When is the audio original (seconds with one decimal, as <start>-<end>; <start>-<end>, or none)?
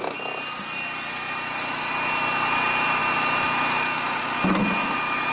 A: 0.0-5.3